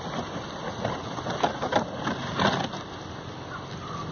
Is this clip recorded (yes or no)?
yes